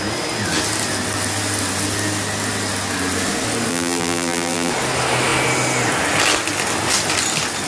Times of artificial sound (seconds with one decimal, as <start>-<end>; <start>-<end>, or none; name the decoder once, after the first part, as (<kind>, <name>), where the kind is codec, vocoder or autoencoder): 3.7-4.7 (vocoder, BigVGAN v2)